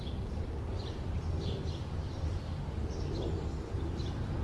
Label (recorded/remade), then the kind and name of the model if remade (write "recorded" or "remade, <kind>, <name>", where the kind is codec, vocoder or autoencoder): remade, vocoder, BigVGAN v2